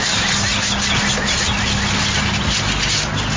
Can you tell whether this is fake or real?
real